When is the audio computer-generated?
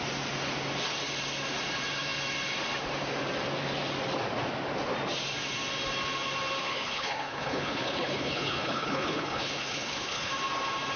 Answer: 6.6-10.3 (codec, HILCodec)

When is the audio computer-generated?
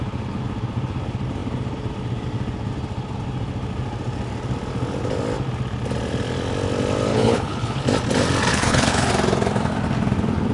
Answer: 7.1-7.8 (codec, HILCodec); 8.5-9.1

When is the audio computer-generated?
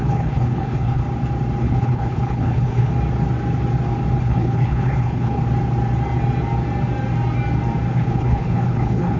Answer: 0.0-1.0 (codec, HILCodec); 1.6-2.9; 4.2-5.4; 7.9-9.2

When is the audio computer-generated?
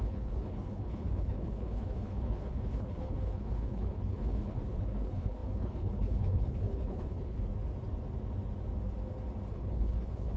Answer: 0.0-7.5 (codec, HILCodec); 9.5-10.4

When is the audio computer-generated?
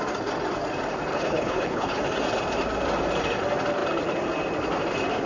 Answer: 1.1-2.0 (codec, HILCodec)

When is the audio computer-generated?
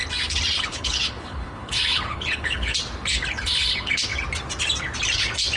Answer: 0.6-2.7 (codec, HILCodec); 3.3-4.1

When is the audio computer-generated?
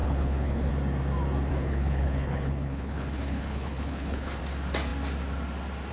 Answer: 0.0-0.7 (codec, HILCodec); 1.5-4.4